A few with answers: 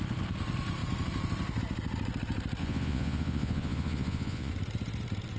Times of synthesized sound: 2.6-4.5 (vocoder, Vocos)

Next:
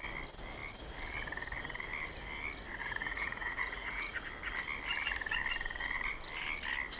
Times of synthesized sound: 2.8-4.2 (vocoder, Vocos)

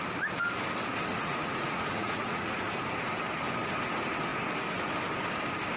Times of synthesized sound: 1.1-2.7 (vocoder, Vocos)

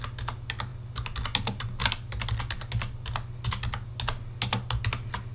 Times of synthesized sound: none

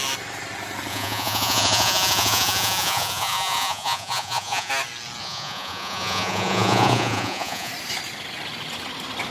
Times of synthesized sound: 0.9-4.7 (vocoder, Vocos); 5.2-7.7

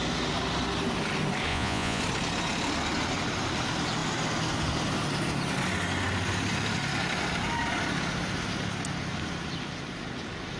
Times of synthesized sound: 1.5-2.0 (vocoder, Vocos)